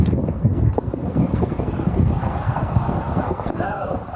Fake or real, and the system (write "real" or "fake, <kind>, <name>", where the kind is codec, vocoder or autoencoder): fake, codec, SNAC